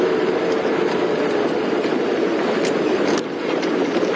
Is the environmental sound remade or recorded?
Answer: remade